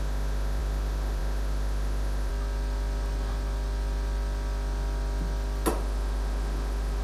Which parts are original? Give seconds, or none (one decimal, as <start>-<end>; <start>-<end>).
2.3-5.7